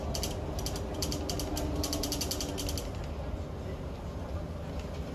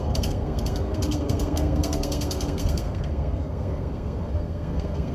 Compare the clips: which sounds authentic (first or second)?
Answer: first